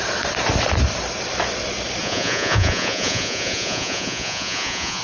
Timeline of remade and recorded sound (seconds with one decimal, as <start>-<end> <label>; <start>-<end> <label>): 0.0-2.0 recorded; 2.0-5.0 remade